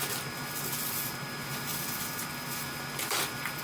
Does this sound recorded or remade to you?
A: recorded